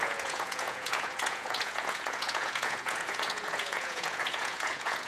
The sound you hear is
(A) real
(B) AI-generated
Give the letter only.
B